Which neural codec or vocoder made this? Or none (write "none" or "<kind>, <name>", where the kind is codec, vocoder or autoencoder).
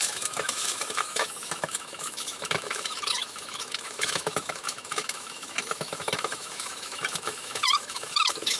autoencoder, DAC-VAE